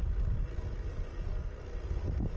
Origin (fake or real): real